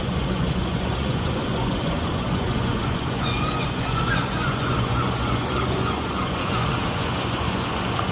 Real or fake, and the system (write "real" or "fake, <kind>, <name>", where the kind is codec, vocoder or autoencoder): fake, vocoder, Vocos